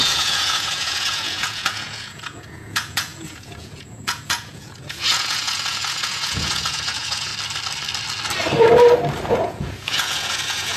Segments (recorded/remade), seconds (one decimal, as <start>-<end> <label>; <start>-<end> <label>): 0.0-7.3 remade; 7.3-9.3 recorded; 9.3-10.8 remade